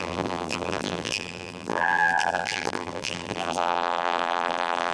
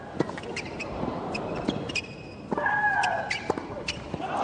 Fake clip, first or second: first